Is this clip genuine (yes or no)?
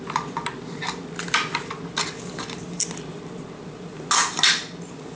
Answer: yes